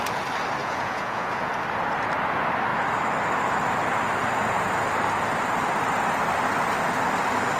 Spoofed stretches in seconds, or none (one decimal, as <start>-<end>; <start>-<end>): 0.6-1.5